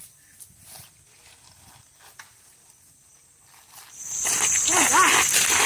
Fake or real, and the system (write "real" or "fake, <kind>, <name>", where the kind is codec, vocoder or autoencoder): real